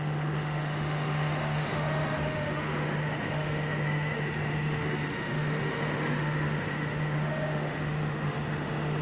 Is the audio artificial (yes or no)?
yes